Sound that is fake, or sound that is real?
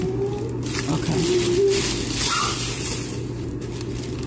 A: real